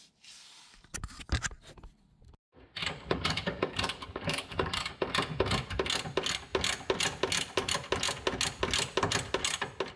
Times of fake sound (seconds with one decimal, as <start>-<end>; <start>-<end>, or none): 2.8-4.9